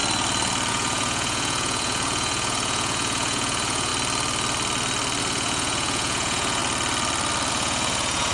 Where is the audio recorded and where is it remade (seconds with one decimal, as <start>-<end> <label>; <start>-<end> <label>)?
0.0-0.7 recorded; 0.7-3.9 remade; 3.9-5.2 recorded; 5.2-6.6 remade; 6.6-7.5 recorded; 7.5-8.3 remade